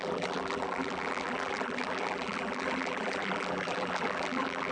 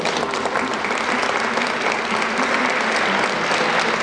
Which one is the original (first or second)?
second